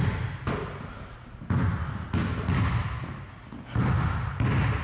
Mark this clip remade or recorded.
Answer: recorded